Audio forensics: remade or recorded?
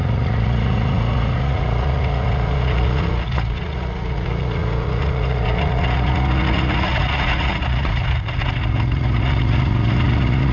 remade